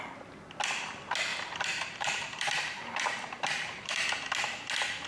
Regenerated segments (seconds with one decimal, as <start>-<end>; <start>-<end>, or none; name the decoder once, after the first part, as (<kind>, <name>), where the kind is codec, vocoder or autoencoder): 1.3-3.9 (vocoder, BigVGAN v2)